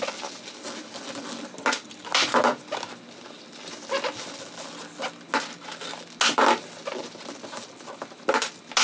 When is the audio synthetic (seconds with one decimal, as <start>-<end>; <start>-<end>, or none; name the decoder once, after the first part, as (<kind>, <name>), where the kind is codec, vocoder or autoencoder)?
none